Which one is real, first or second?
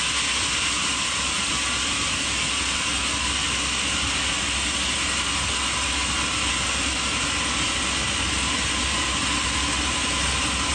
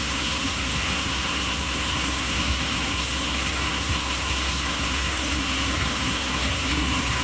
first